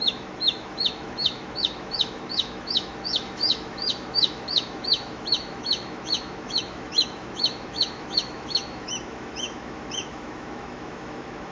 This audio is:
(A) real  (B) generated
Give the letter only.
B